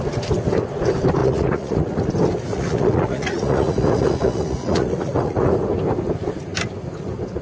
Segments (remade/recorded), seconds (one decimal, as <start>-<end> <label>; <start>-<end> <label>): 0.0-1.2 recorded; 1.2-2.1 remade; 2.1-2.5 recorded; 2.5-5.5 remade; 5.5-7.4 recorded